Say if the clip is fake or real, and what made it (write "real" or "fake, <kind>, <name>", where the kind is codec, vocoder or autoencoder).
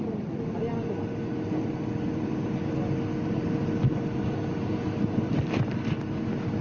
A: real